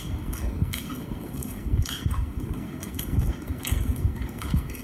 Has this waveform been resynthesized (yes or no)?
yes